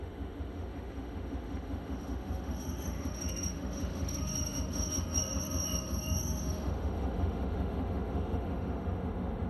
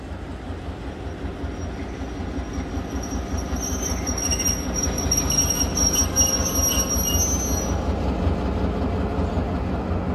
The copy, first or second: first